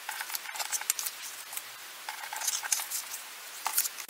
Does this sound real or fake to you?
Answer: real